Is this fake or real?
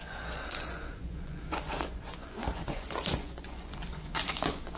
fake